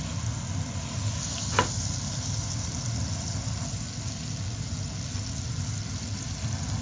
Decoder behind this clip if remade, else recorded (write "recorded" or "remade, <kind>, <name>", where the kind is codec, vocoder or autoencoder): recorded